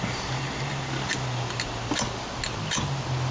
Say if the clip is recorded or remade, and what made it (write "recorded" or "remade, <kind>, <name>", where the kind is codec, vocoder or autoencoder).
recorded